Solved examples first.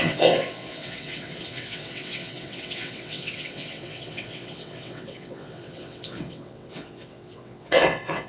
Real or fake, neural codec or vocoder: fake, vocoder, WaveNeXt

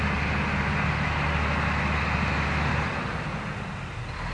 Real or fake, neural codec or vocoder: real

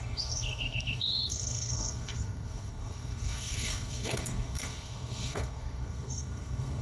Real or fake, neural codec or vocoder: fake, codec, SNAC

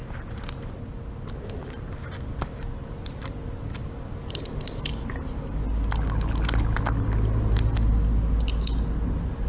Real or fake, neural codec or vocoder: real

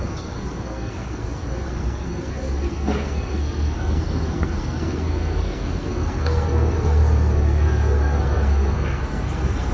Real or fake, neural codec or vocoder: fake, codec, SNAC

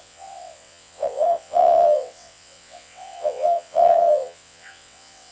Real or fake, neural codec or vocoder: fake, vocoder, WaveNeXt